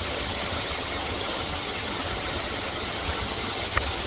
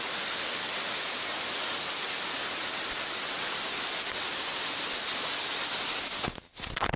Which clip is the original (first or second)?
second